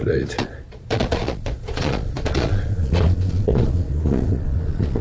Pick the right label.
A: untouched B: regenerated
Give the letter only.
B